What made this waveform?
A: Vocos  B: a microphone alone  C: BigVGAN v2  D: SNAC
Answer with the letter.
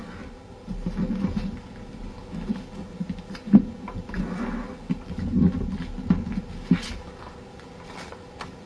B